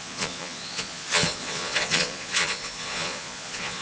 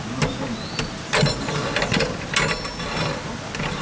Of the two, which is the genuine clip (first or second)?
second